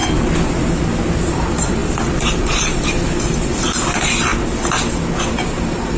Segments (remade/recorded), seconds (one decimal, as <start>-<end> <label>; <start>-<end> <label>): 0.0-1.3 recorded; 1.3-4.3 remade; 4.3-5.3 recorded; 5.3-6.0 remade